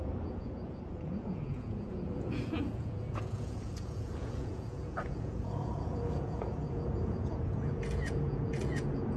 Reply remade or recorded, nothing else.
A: remade